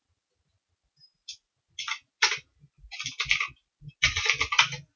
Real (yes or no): yes